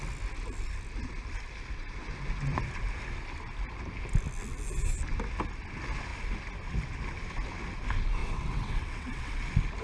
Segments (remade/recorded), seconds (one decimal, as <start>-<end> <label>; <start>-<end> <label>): 0.0-8.2 recorded; 8.2-9.4 remade; 9.4-9.8 recorded